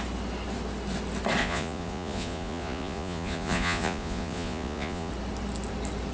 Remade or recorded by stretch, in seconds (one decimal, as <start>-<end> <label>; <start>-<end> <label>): 0.0-1.4 recorded; 1.4-5.1 remade; 5.1-6.1 recorded